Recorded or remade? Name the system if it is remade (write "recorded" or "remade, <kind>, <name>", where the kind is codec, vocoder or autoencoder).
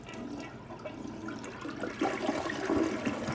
recorded